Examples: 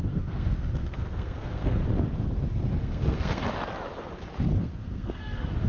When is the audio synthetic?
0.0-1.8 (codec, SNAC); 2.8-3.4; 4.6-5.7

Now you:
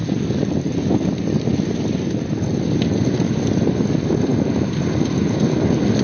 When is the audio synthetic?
none

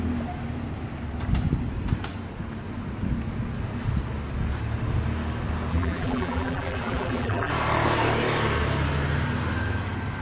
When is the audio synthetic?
5.7-7.5 (vocoder, BigVGAN v2)

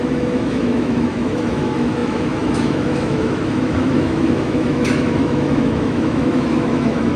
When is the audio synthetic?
0.0-7.2 (autoencoder, DAC-VAE)

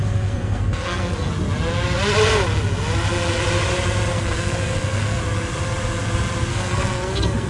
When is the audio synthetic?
0.0-1.3 (codec, SNAC); 4.1-5.2; 6.5-7.5

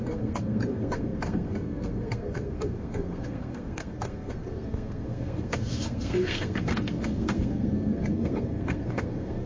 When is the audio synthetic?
0.0-9.5 (codec, SNAC)